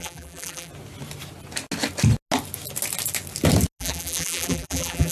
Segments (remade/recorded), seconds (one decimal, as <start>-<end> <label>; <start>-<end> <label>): 0.0-0.7 remade; 0.7-3.8 recorded; 3.8-5.1 remade